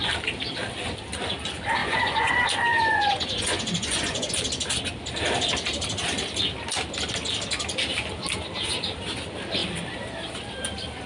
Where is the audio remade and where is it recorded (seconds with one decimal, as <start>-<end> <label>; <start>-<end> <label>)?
0.0-1.8 recorded; 1.8-2.3 remade; 2.3-2.7 recorded; 2.7-4.3 remade; 4.3-11.1 recorded